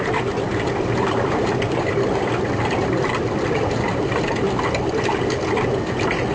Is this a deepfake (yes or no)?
no